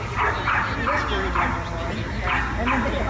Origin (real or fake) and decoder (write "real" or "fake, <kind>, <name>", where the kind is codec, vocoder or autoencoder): real